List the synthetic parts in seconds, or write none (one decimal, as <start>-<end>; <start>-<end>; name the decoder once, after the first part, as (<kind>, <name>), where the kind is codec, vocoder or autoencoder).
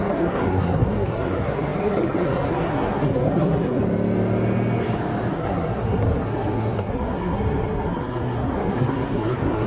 0.0-3.8 (codec, SNAC); 5.3-9.7